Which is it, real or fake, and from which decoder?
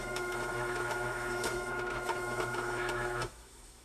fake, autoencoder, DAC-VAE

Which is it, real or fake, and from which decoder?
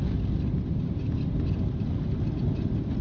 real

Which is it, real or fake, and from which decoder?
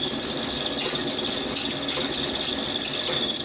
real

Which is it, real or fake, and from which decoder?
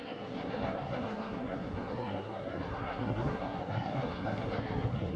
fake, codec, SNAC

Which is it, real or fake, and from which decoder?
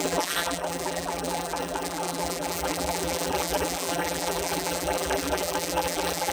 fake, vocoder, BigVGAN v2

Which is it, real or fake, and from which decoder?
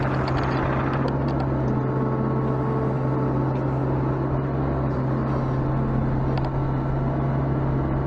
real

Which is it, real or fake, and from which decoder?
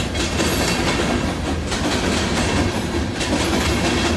real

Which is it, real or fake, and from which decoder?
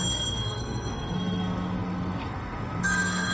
fake, codec, SNAC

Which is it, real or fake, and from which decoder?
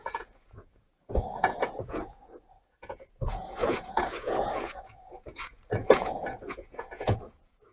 fake, vocoder, Vocos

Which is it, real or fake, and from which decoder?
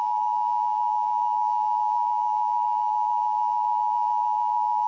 fake, codec, DAC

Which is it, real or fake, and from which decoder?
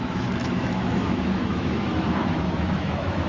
fake, autoencoder, DAC-VAE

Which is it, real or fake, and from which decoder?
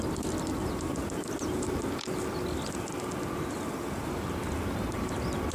real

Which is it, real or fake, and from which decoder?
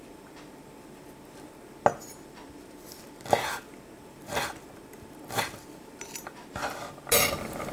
real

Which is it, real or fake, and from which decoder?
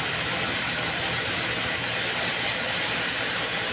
real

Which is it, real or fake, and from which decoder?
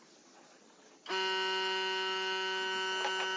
real